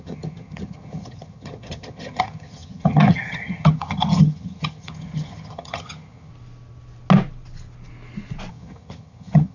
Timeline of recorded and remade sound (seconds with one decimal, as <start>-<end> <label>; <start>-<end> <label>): 0.0-6.3 remade; 6.3-8.5 recorded; 8.5-9.5 remade

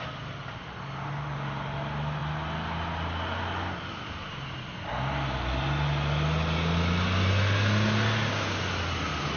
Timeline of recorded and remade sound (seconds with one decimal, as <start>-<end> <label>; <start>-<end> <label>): 0.0-9.4 recorded

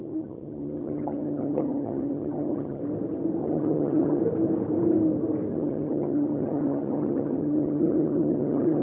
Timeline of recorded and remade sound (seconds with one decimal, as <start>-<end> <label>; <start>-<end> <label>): 0.0-2.8 remade; 2.8-3.4 recorded; 3.4-4.2 remade; 4.2-5.5 recorded; 5.5-8.8 remade

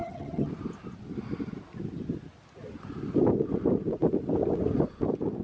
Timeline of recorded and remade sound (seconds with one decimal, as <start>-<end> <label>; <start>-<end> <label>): 0.0-0.5 remade; 0.5-5.4 recorded

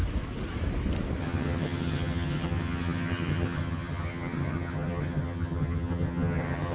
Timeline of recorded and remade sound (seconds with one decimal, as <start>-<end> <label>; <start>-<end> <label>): 0.0-1.2 recorded; 1.2-6.7 remade

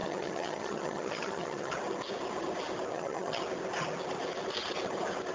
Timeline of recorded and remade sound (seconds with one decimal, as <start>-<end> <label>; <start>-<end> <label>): 0.0-1.7 remade; 1.7-2.9 recorded; 2.9-3.4 remade; 3.4-5.3 recorded

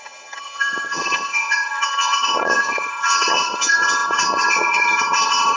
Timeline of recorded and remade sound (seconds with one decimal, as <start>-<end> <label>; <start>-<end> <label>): 0.0-5.6 remade